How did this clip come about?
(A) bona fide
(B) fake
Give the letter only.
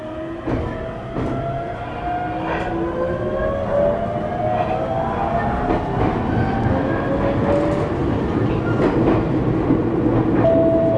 A